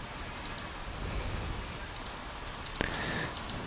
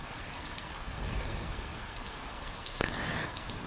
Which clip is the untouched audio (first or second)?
first